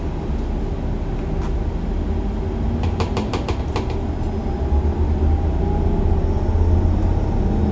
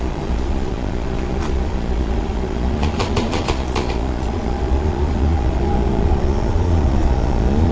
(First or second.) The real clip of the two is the first